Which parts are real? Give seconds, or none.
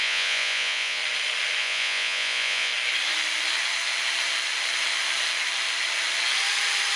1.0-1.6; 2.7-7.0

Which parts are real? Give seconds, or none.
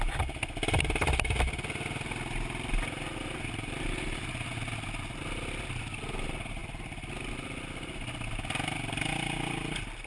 0.0-10.1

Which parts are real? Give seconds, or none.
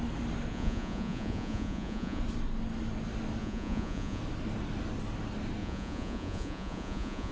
0.0-0.5; 2.2-3.4; 4.2-5.6